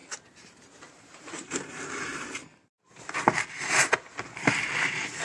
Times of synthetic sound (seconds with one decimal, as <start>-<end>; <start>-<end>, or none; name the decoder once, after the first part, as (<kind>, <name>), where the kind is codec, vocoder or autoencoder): 0.0-2.8 (vocoder, BigVGAN v2)